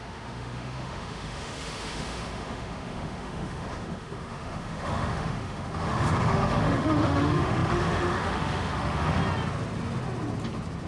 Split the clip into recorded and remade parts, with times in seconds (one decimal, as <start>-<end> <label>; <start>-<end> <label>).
0.0-9.2 remade; 9.2-10.9 recorded